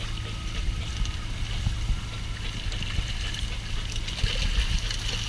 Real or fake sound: real